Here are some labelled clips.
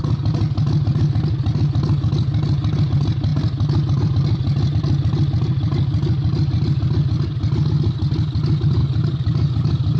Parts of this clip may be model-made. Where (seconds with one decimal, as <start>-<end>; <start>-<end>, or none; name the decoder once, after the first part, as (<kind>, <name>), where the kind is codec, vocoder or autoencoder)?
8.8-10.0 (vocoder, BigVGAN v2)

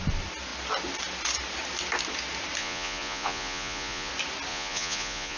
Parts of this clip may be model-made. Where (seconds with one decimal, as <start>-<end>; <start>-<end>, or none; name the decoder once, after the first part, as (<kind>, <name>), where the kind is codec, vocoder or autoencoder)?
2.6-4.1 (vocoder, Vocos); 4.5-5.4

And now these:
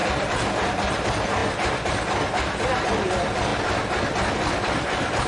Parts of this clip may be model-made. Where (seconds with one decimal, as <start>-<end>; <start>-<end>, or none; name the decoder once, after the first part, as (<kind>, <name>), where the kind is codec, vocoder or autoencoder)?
none

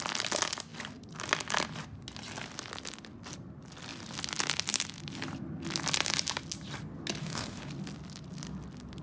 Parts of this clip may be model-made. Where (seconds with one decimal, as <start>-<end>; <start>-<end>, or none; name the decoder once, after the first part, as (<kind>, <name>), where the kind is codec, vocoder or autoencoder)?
7.2-7.7 (autoencoder, DAC-VAE)

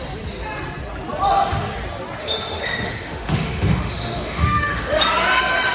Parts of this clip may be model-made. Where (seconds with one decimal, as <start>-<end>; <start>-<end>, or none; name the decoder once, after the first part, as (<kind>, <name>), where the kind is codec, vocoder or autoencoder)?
2.2-5.0 (autoencoder, DAC-VAE)

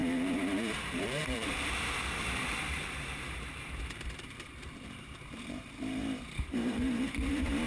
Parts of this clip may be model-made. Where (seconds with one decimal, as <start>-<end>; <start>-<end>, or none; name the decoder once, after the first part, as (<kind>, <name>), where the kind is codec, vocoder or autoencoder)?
0.0-7.7 (vocoder, BigVGAN v2)